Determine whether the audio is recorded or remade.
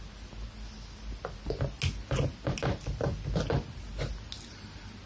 recorded